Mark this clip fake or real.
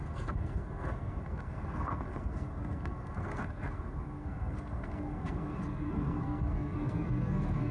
fake